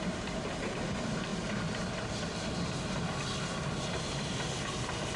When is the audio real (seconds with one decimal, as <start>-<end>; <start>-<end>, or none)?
0.0-5.2